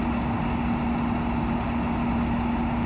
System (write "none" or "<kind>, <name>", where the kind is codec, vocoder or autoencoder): none